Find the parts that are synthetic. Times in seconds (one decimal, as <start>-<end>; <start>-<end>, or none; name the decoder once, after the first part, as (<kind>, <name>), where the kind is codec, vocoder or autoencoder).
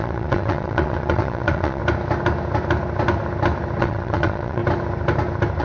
0.0-1.8 (vocoder, WaveNeXt); 3.8-4.6